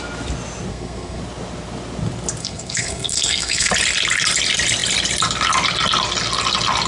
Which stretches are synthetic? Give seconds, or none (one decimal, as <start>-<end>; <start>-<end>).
0.7-1.2; 2.4-3.7